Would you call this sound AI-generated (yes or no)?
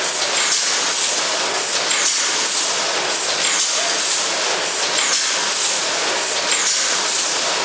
no